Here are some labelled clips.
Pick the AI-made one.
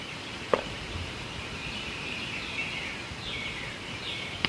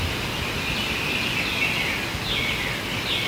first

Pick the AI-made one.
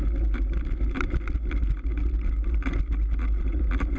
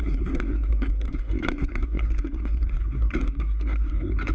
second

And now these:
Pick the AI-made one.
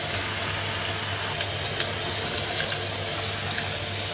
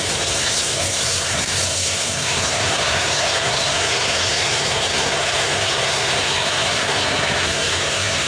second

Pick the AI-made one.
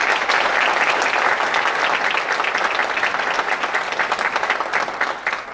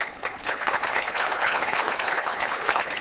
second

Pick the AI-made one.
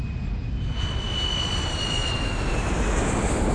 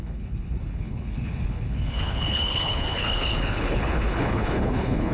second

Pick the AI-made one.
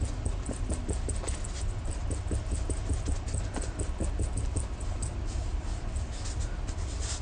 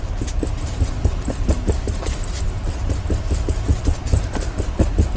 second